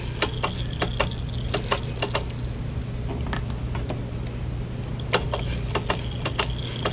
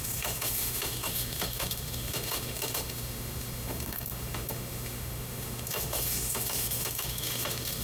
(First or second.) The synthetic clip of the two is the second